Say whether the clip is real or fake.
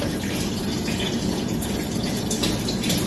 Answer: real